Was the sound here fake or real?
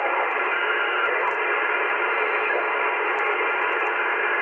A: real